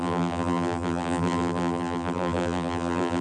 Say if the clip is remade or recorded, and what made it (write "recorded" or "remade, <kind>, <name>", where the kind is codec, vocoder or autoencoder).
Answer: remade, vocoder, BigVGAN v2